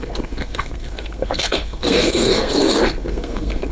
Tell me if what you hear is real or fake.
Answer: fake